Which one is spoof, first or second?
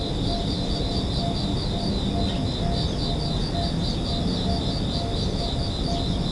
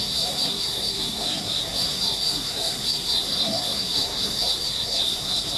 second